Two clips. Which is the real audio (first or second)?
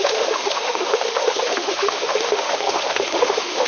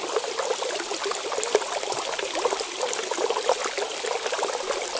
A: second